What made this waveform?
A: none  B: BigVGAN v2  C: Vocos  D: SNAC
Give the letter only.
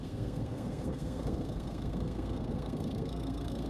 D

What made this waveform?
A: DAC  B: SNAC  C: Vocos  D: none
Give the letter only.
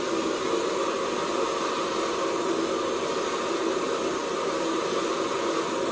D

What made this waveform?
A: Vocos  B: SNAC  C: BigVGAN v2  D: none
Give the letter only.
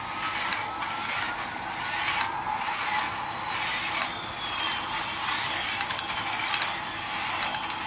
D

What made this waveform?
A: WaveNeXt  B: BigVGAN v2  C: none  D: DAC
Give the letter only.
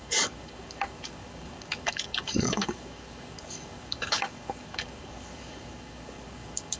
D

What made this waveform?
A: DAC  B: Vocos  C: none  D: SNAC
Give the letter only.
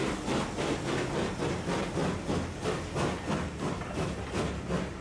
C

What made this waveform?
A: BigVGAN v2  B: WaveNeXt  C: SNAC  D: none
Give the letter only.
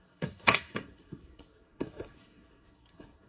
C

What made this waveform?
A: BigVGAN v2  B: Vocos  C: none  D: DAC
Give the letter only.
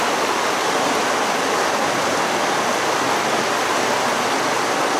C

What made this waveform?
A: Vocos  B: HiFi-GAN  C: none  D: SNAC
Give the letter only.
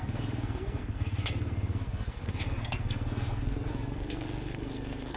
D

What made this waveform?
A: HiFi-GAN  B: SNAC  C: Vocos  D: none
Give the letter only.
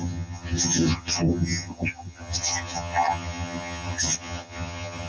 A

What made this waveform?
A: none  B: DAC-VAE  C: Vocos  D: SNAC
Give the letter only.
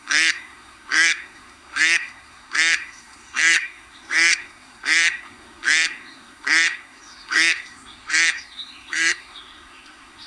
D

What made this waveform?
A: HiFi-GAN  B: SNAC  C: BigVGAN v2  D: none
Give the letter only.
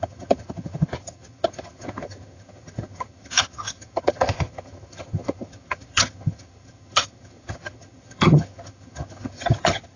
A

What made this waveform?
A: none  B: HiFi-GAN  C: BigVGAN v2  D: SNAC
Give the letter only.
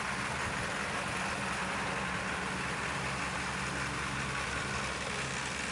A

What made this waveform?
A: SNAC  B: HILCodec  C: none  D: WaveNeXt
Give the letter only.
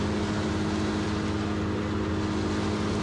C